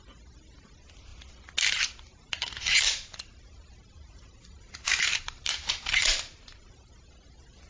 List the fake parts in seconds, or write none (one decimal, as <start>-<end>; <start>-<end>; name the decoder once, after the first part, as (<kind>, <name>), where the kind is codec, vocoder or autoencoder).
2.1-6.7 (vocoder, BigVGAN v2)